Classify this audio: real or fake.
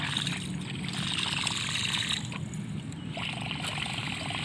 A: real